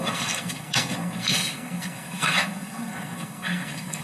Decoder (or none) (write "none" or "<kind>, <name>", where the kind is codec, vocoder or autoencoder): codec, SNAC